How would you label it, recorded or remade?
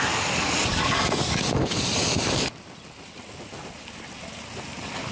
recorded